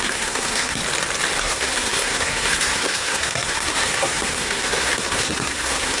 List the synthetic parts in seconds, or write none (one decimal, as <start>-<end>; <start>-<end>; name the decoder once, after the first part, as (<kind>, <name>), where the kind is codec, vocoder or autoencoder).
0.0-0.8 (codec, SNAC); 1.4-6.0